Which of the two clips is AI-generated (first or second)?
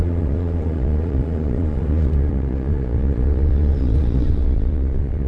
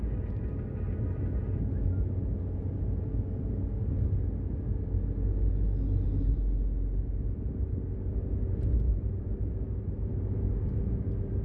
first